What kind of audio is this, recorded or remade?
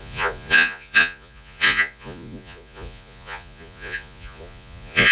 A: remade